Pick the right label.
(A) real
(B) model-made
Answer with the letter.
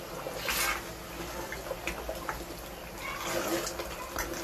A